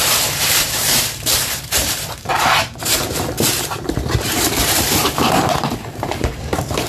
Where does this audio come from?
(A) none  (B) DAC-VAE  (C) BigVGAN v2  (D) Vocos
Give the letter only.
C